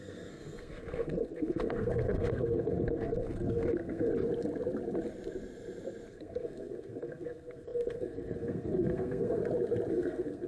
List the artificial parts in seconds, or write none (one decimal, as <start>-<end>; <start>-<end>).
0.0-4.1; 6.1-9.4; 9.9-10.5